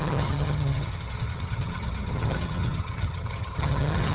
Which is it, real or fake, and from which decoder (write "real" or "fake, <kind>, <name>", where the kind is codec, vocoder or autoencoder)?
fake, vocoder, HiFi-GAN